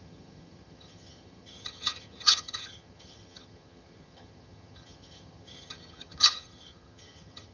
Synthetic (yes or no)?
yes